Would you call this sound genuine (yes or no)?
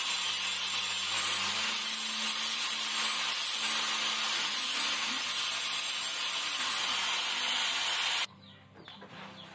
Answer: yes